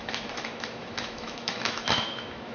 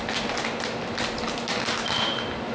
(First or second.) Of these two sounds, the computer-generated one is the first